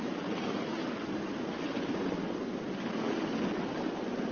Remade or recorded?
recorded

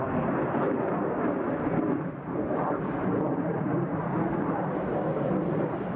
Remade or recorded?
recorded